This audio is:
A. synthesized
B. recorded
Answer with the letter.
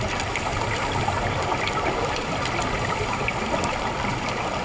A